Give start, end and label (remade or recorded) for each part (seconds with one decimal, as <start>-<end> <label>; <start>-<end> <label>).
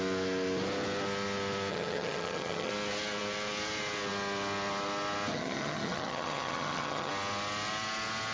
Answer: 0.0-1.7 recorded; 1.7-2.7 remade; 2.7-5.3 recorded; 5.3-7.1 remade; 7.1-8.3 recorded